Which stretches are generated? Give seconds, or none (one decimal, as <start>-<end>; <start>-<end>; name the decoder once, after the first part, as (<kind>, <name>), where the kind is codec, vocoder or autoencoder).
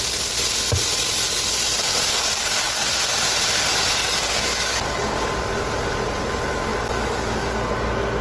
2.1-3.0 (codec, DAC); 4.0-5.3; 6.7-7.5